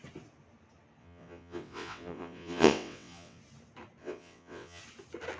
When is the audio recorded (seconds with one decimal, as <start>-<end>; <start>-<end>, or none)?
0.0-1.0; 3.4-4.0; 4.8-5.4